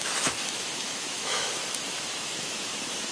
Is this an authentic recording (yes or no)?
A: no